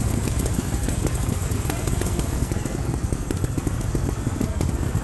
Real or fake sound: fake